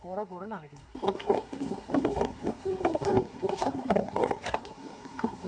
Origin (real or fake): fake